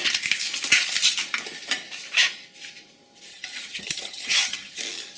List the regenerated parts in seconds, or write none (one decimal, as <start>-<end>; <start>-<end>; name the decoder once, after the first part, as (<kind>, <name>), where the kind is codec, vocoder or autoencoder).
3.3-4.8 (vocoder, HiFi-GAN)